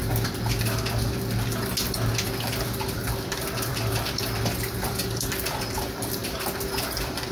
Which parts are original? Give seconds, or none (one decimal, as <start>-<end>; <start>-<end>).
0.0-2.5